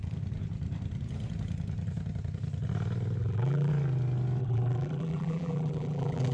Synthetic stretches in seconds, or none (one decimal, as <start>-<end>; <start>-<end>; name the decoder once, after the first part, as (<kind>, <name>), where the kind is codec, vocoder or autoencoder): 3.2-3.7 (vocoder, BigVGAN v2); 4.4-6.3